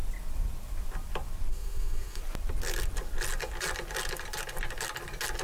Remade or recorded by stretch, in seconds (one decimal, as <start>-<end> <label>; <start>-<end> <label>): 0.0-1.5 recorded; 1.5-2.2 remade; 2.2-5.4 recorded